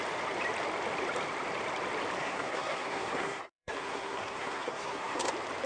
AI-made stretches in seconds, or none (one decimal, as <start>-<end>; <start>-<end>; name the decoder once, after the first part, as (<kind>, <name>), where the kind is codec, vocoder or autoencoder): 2.2-5.3 (codec, SNAC)